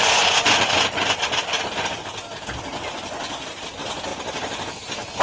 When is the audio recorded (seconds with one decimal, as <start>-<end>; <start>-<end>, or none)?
1.2-2.7; 3.3-5.2